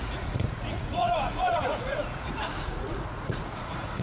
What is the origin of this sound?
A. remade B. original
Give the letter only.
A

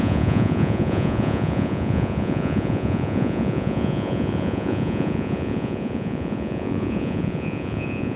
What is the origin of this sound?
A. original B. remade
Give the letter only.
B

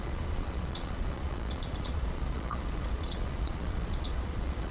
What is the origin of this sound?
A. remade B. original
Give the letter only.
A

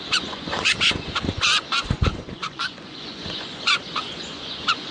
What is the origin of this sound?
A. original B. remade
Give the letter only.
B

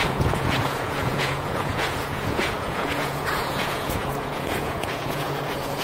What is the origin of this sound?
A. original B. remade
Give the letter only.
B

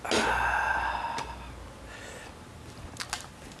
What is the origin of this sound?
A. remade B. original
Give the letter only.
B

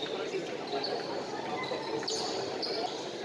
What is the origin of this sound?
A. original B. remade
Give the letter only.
A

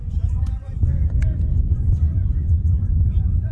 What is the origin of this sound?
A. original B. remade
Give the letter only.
B